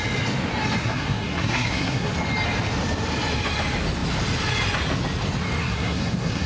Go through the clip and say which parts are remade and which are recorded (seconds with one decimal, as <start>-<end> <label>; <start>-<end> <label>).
0.0-0.8 recorded; 0.8-2.1 remade; 2.1-5.6 recorded; 5.6-6.5 remade